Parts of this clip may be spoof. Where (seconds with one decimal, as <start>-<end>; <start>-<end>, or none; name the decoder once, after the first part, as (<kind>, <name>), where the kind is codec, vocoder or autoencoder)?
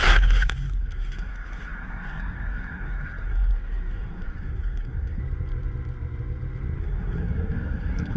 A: 0.0-5.2 (codec, SNAC); 6.8-8.2